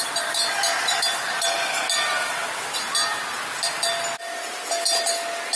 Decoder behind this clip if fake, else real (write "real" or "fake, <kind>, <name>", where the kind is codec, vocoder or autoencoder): real